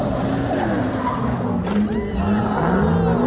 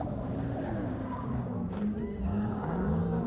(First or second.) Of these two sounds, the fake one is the second